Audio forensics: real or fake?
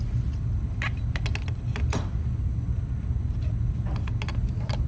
real